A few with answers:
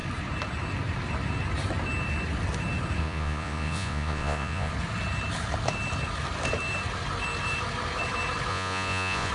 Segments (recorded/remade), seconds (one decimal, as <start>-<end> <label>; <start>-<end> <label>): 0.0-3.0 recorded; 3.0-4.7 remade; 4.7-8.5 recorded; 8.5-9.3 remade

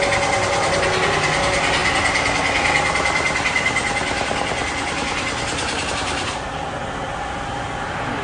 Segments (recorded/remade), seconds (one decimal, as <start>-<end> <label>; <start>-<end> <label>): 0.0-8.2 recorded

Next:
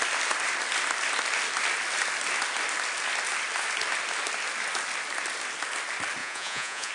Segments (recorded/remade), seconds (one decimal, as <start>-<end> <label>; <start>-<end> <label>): 0.0-6.2 recorded; 6.2-6.9 remade

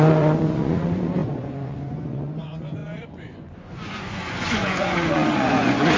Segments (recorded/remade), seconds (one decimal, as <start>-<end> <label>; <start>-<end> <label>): 0.0-6.0 remade

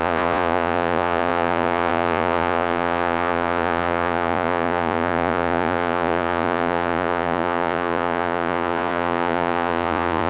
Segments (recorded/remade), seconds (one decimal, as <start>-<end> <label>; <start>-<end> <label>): 0.0-10.3 remade